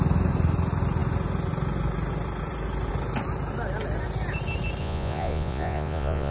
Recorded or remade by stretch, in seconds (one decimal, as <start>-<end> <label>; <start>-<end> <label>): 0.0-4.8 recorded; 4.8-6.3 remade